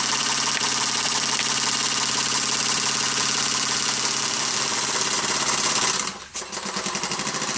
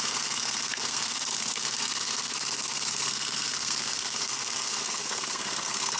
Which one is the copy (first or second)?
second